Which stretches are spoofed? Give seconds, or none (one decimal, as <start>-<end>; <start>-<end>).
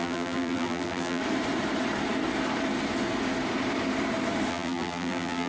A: 0.0-1.2; 4.5-5.5